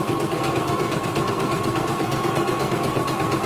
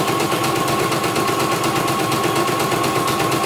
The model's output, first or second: first